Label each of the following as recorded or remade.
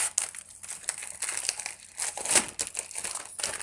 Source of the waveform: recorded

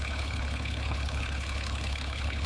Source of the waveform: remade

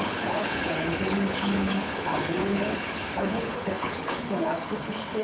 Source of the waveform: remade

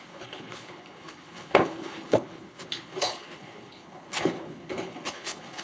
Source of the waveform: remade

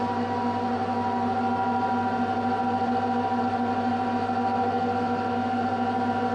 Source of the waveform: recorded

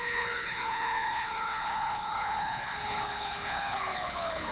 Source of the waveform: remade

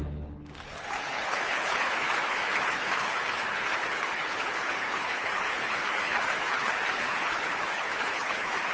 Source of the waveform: remade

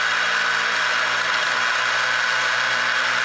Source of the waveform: recorded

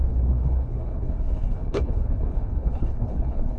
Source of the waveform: remade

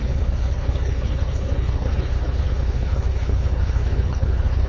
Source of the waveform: remade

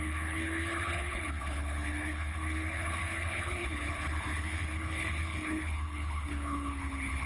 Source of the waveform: remade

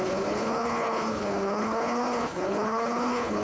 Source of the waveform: remade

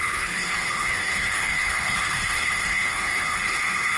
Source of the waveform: remade